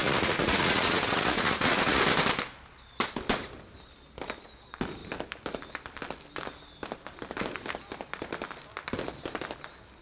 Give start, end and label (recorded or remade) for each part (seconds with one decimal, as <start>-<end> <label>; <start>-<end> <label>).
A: 0.0-2.0 remade; 2.0-10.0 recorded